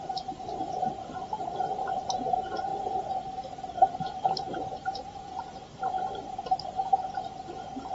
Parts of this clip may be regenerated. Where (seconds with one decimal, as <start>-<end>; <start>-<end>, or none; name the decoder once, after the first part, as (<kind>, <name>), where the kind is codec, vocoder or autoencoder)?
none